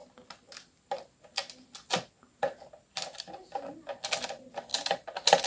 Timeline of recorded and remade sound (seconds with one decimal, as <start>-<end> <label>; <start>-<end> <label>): 0.0-5.5 recorded